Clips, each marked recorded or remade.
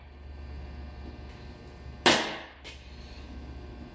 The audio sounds recorded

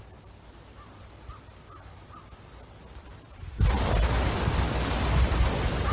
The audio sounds recorded